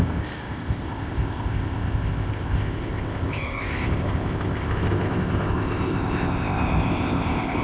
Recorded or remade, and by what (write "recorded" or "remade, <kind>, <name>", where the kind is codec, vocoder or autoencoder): remade, codec, ZipCodec